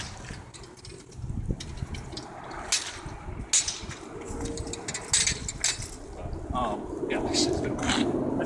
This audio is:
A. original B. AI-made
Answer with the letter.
A